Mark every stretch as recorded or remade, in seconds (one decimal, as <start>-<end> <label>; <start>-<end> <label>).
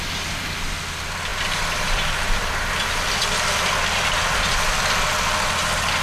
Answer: 0.0-6.0 recorded